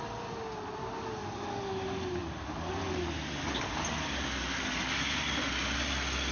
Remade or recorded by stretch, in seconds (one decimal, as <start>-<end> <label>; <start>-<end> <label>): 0.0-6.3 recorded